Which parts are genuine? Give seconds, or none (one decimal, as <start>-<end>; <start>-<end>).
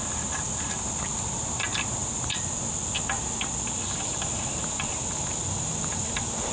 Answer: 0.0-6.5